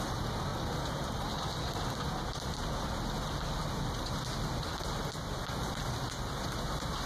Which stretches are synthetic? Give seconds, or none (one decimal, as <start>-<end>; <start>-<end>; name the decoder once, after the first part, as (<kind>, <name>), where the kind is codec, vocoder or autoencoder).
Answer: none